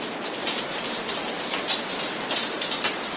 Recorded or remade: recorded